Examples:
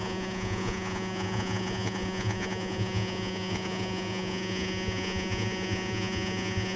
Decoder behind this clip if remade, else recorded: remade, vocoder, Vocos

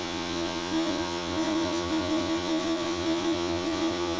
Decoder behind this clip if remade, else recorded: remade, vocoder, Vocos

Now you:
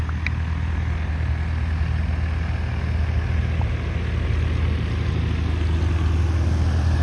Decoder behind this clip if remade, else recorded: recorded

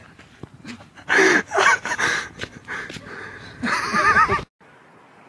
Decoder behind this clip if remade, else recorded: recorded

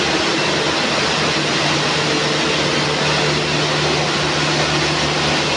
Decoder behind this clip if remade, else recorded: recorded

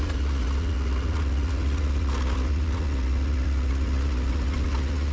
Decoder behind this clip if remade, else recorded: remade, vocoder, Vocos